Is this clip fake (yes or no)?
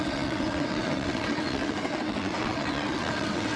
yes